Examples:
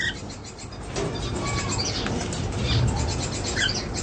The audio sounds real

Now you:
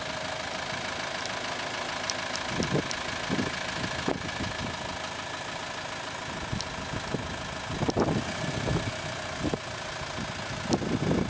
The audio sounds real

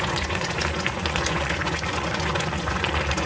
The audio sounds fake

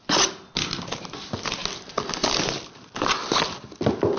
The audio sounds real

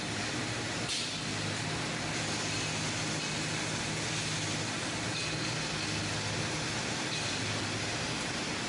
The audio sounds real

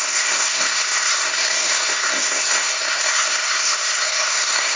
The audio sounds fake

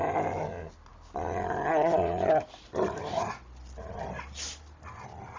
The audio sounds real